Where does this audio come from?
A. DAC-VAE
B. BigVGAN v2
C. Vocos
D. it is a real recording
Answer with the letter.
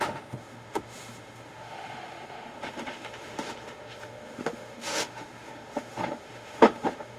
A